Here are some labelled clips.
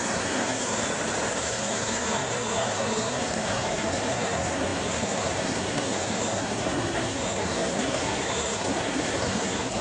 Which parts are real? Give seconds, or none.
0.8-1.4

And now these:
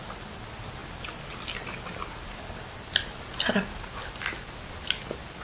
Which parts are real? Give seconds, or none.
0.0-5.4